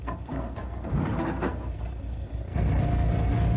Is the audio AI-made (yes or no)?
yes